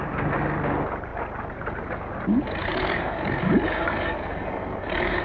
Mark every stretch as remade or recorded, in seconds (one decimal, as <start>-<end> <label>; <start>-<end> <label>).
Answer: 0.0-2.7 recorded; 2.7-5.2 remade